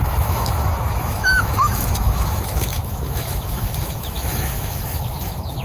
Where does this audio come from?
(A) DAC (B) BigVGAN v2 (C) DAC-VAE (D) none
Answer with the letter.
C